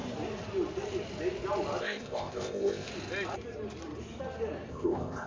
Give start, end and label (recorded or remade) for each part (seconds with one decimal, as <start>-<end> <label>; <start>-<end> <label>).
0.0-1.8 recorded; 1.8-2.9 remade; 2.9-4.7 recorded; 4.7-5.3 remade

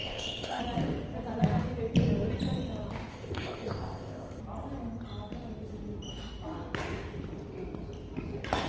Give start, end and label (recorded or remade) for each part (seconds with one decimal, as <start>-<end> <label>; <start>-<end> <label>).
0.0-0.6 remade; 0.6-3.1 recorded; 3.1-4.4 remade; 4.4-8.7 recorded